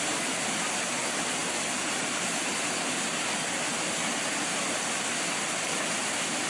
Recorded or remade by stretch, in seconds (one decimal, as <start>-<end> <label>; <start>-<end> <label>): 0.0-6.5 recorded